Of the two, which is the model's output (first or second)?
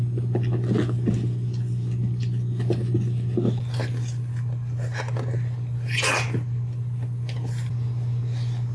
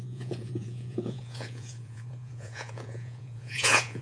second